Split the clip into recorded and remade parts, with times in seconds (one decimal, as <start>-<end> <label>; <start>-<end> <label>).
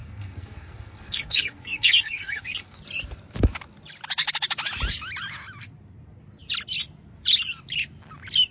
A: 0.0-2.8 remade; 2.8-8.5 recorded